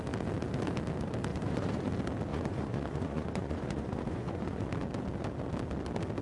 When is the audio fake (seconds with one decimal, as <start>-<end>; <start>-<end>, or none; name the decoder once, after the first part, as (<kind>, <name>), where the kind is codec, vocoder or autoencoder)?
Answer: 1.3-1.9 (vocoder, Vocos); 2.3-4.7